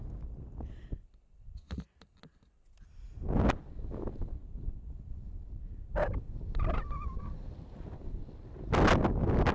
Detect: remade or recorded recorded